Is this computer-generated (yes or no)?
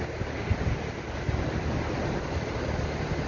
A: no